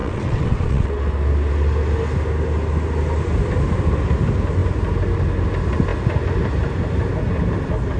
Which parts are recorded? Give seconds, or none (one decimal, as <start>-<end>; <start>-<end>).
0.9-8.0